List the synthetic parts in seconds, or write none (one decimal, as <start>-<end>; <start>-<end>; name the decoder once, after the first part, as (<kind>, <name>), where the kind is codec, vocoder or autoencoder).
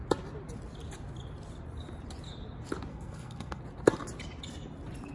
2.9-3.6 (codec, SNAC)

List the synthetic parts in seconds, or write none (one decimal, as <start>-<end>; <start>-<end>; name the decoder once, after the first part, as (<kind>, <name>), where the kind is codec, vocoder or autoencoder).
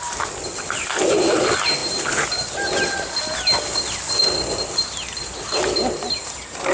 none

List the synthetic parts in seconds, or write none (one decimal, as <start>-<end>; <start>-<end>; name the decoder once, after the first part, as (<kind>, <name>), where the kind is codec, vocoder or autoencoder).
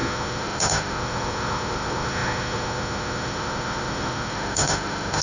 0.0-5.2 (autoencoder, DAC-VAE)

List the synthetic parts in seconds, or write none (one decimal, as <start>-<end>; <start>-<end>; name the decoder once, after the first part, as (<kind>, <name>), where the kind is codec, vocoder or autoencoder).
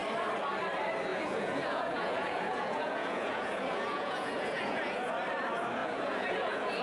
1.1-5.1 (vocoder, Vocos); 5.8-6.8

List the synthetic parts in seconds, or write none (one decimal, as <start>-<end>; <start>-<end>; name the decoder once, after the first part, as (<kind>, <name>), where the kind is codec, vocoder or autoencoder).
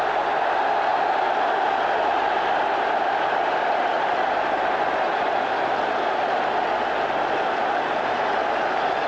none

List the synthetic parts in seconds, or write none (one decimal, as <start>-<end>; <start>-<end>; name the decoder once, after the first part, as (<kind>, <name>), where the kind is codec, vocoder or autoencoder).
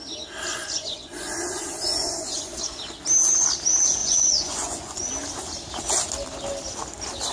0.5-2.8 (vocoder, Vocos); 4.0-5.1